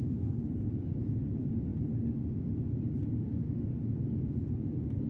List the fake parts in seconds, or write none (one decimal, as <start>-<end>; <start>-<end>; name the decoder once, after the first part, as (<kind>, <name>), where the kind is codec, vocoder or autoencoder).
3.1-3.8 (autoencoder, DAC-VAE)